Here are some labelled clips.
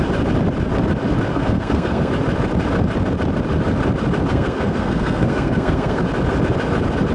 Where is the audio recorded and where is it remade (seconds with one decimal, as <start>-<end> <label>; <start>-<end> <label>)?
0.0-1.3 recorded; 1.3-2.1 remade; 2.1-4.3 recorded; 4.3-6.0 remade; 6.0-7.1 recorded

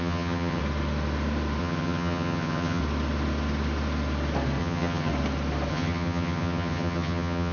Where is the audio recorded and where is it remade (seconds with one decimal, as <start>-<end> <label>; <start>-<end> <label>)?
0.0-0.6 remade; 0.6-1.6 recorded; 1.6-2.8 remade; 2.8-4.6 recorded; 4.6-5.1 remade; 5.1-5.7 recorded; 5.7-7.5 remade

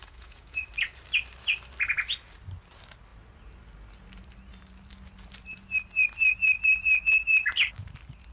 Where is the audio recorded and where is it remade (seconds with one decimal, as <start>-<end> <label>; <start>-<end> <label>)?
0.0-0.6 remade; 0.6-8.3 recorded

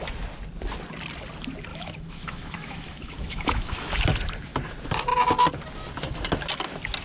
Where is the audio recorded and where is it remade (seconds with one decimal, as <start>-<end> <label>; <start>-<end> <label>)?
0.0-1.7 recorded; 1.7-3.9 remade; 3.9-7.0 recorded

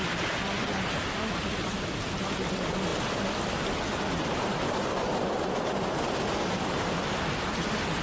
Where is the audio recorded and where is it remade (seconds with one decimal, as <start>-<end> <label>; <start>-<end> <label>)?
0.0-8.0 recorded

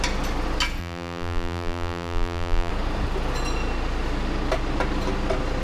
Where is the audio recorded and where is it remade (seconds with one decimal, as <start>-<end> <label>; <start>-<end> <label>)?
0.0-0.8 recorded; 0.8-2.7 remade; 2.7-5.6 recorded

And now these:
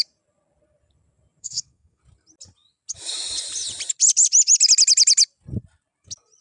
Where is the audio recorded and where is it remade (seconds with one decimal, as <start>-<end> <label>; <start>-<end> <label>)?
0.0-1.4 recorded; 1.4-2.0 remade; 2.0-6.4 recorded

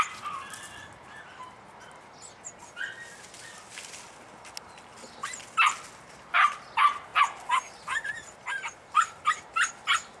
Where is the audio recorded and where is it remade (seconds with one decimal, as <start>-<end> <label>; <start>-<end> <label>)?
0.0-10.2 recorded